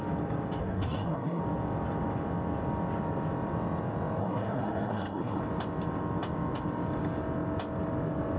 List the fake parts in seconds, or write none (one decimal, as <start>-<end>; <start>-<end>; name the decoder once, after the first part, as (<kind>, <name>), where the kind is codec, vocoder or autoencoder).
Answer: 0.6-1.4 (codec, SNAC); 4.2-5.4